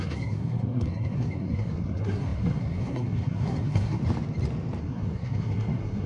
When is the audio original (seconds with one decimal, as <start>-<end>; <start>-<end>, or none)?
4.0-4.8